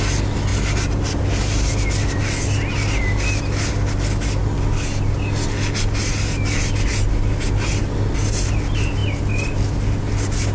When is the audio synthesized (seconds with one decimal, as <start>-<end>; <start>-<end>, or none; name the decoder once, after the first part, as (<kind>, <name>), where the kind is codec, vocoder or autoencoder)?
none